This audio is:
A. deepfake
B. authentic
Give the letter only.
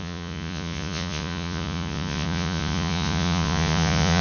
A